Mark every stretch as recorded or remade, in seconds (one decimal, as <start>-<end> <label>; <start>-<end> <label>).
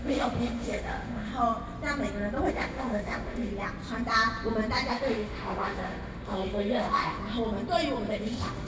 0.0-1.3 remade; 1.3-2.5 recorded; 2.5-3.5 remade; 3.5-4.9 recorded; 4.9-7.2 remade; 7.2-8.1 recorded; 8.1-8.7 remade